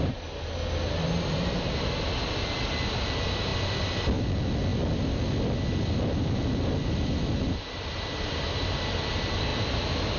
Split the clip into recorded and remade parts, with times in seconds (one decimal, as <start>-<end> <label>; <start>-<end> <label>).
0.0-10.2 recorded